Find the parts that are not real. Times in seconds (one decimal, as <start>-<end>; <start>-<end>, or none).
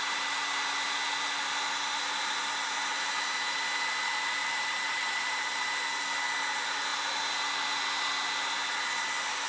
4.4-5.5